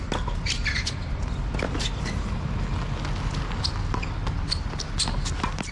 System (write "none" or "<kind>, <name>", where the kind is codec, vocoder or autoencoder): none